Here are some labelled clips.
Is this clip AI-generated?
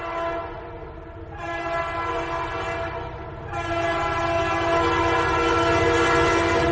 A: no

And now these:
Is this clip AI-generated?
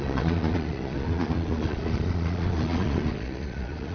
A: yes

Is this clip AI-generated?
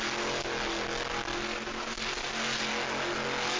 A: no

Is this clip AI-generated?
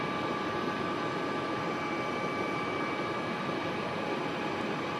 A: no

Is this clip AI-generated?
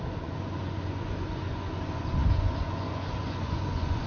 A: yes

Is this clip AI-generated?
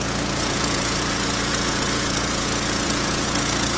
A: yes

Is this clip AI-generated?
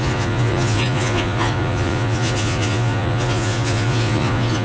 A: yes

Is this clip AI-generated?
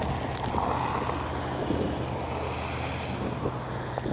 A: no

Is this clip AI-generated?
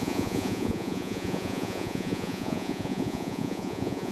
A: yes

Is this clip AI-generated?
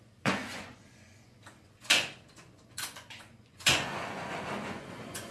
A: yes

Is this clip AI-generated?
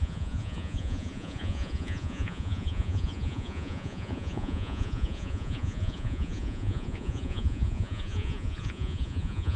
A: yes